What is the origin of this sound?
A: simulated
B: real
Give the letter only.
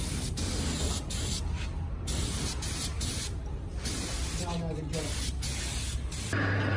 B